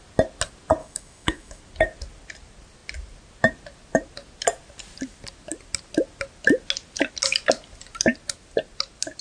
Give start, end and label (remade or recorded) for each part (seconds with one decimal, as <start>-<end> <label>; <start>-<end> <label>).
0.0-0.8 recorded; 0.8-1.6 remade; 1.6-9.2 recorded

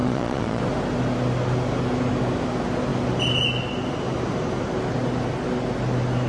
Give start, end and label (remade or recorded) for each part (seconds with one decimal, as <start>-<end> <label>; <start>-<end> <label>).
0.0-0.6 remade; 0.6-6.3 recorded

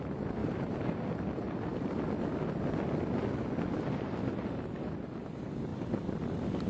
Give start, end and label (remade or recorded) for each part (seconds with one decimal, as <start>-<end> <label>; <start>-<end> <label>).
0.0-0.4 recorded; 0.4-1.0 remade; 1.0-6.7 recorded